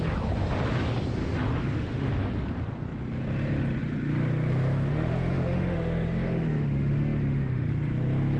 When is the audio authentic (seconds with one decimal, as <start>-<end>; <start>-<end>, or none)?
0.0-1.2; 2.1-4.9; 7.7-8.4